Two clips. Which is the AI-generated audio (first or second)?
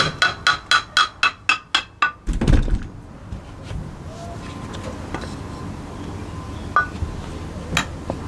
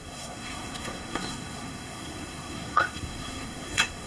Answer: second